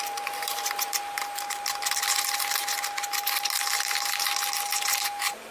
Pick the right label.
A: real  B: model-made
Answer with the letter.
A